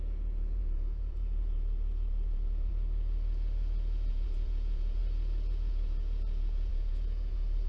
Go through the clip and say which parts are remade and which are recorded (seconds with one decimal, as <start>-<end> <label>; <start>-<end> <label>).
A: 0.0-2.7 remade; 2.7-4.1 recorded; 4.1-5.0 remade; 5.0-5.7 recorded; 5.7-7.7 remade